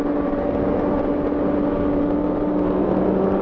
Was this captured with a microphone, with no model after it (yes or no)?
yes